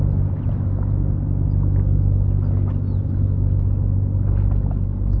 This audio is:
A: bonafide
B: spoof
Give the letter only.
A